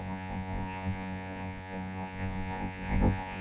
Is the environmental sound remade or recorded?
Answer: remade